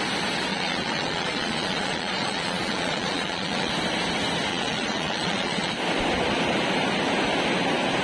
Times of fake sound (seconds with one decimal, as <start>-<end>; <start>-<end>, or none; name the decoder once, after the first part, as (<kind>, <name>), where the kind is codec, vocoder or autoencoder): 0.5-3.7 (vocoder, Vocos); 4.5-5.7